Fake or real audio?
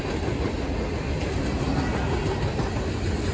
real